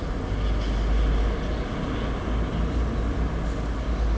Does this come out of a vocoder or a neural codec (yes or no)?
no